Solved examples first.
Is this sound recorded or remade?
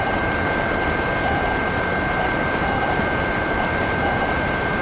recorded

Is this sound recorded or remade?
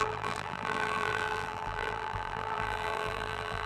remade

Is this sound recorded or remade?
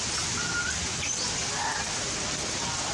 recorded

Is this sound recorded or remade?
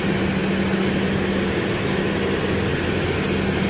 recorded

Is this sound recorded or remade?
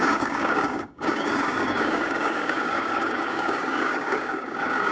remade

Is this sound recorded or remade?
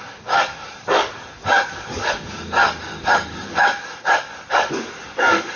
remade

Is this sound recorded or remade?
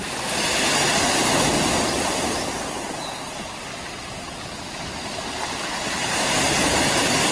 recorded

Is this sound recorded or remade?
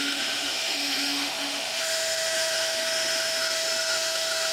remade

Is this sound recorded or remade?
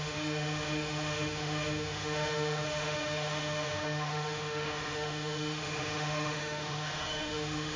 remade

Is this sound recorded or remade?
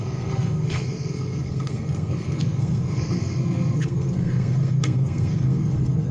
remade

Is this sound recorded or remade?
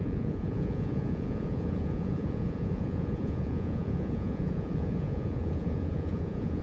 remade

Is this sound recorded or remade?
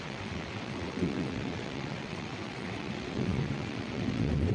remade